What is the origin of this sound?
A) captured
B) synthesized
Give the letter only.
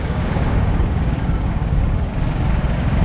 B